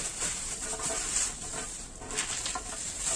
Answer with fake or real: real